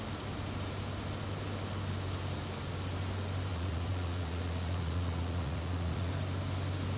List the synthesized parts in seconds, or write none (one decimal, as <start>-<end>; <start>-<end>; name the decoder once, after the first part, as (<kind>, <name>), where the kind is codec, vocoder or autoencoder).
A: 3.5-6.1 (vocoder, Vocos)